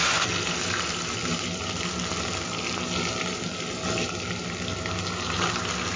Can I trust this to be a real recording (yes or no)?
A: yes